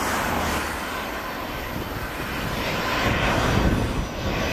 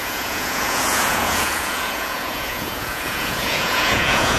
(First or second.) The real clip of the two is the first